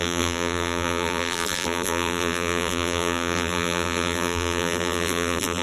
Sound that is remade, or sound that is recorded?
remade